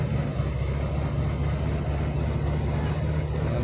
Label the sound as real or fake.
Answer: real